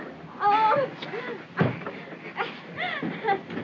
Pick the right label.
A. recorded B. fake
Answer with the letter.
A